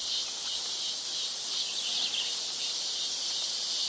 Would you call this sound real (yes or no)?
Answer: yes